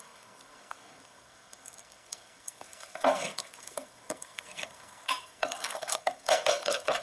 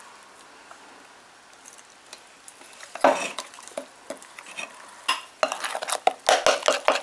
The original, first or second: second